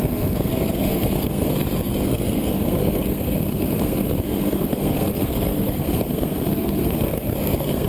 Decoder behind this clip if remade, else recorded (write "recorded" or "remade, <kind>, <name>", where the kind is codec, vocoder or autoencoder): remade, codec, SNAC